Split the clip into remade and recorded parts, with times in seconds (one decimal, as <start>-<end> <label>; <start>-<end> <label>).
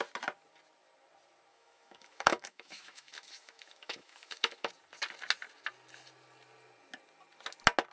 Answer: 0.0-1.5 recorded; 1.5-4.7 remade; 4.7-7.9 recorded